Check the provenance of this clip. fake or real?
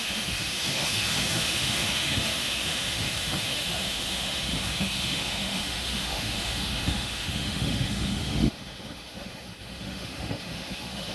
fake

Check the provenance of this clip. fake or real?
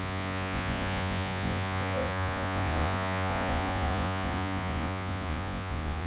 fake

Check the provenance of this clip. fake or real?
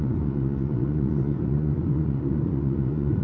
fake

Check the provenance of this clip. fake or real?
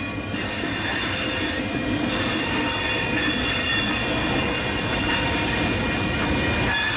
real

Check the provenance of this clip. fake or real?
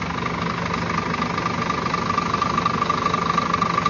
real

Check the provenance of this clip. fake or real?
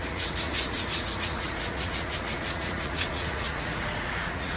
fake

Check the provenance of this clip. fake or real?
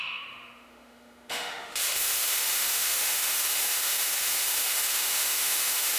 fake